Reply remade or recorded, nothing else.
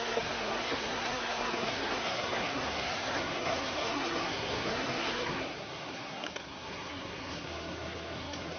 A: remade